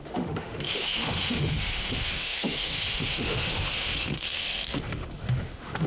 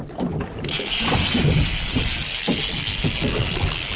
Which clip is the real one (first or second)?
second